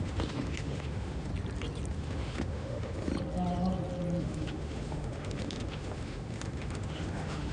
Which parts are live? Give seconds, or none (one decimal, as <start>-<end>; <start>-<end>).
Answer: 1.3-1.9; 3.1-4.2